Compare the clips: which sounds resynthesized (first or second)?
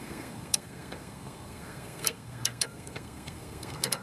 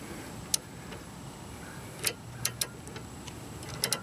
first